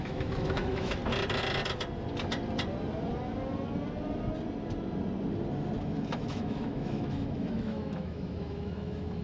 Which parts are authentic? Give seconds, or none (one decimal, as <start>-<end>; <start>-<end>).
1.0-5.8